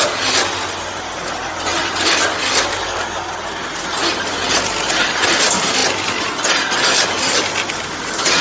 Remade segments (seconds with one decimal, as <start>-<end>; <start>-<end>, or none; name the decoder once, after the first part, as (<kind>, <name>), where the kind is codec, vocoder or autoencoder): none